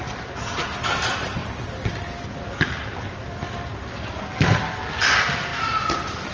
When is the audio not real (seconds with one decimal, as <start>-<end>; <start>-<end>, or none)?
none